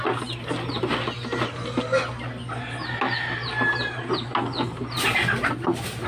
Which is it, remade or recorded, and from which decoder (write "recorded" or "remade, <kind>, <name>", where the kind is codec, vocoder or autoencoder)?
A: recorded